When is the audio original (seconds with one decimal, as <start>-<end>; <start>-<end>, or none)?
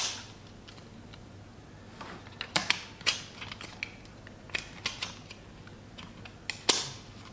0.0-7.3